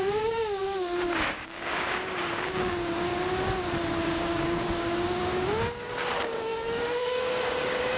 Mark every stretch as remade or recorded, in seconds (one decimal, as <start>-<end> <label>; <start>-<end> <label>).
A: 0.0-3.1 remade; 3.1-4.0 recorded; 4.0-8.0 remade